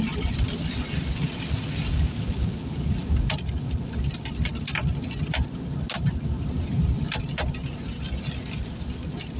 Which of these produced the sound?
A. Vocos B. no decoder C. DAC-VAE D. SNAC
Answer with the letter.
B